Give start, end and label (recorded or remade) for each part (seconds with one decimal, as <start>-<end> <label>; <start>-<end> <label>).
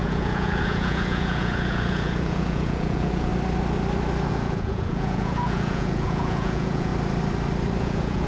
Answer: 0.0-3.3 remade; 3.3-4.3 recorded; 4.3-6.9 remade; 6.9-7.8 recorded; 7.8-8.3 remade